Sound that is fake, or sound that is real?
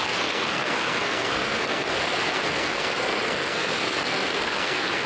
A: fake